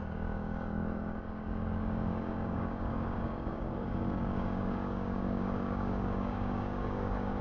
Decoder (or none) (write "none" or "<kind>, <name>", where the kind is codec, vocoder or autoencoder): codec, DAC